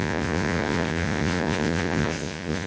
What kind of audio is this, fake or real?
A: fake